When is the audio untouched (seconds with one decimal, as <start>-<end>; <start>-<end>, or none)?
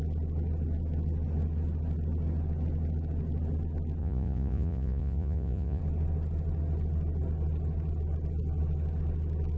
0.0-4.0; 5.8-9.6